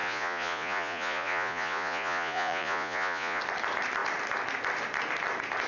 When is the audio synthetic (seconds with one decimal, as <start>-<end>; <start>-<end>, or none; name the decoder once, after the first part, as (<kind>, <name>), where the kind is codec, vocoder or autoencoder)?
0.0-3.4 (vocoder, Vocos)